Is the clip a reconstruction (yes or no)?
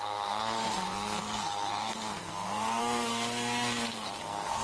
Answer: yes